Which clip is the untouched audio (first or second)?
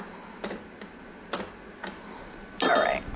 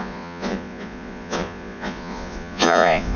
first